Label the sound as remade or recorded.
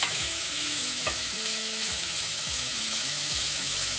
remade